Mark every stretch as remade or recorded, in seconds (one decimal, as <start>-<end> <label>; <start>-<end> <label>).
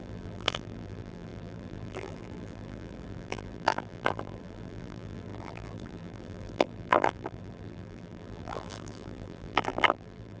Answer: 0.0-10.4 remade